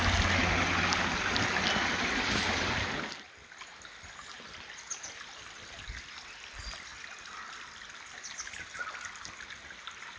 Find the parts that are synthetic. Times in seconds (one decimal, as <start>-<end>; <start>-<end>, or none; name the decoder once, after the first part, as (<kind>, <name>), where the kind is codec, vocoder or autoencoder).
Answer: none